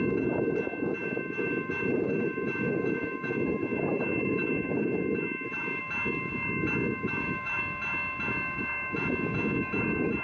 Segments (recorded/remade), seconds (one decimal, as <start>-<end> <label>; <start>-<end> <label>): 0.0-1.0 recorded; 1.0-5.8 remade; 5.8-7.0 recorded; 7.0-7.6 remade; 7.6-10.2 recorded